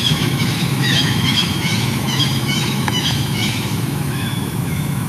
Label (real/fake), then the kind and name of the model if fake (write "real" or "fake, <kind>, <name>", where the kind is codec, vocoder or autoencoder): fake, autoencoder, DAC-VAE